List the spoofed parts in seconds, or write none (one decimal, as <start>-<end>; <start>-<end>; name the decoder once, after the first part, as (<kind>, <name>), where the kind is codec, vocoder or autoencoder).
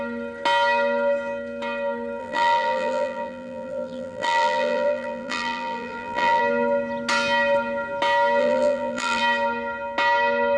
2.2-6.4 (vocoder, BigVGAN v2); 8.4-9.2